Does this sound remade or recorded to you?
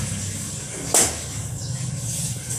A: remade